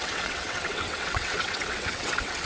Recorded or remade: remade